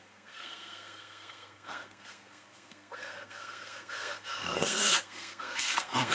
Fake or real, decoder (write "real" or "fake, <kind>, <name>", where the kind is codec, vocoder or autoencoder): fake, codec, SNAC